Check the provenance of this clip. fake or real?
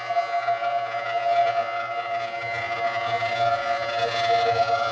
fake